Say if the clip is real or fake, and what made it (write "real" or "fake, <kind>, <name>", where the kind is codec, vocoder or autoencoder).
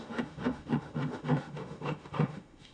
fake, autoencoder, DAC-VAE